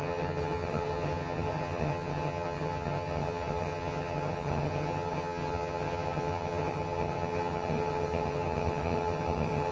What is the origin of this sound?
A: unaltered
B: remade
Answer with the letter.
B